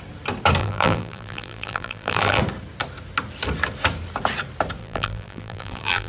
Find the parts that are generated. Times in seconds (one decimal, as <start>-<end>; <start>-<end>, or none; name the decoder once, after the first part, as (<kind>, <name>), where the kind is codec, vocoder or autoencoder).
0.6-2.4 (vocoder, BigVGAN v2); 4.8-6.1